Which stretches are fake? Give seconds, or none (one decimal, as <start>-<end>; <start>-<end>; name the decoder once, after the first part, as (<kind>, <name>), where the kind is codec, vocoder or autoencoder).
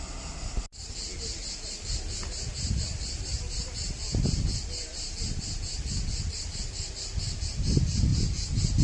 4.1-5.1 (vocoder, BigVGAN v2)